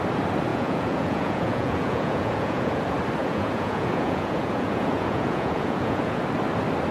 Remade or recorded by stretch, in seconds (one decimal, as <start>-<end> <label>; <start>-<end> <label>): 0.0-0.5 recorded; 0.5-2.8 remade; 2.8-3.2 recorded; 3.2-6.2 remade; 6.2-6.9 recorded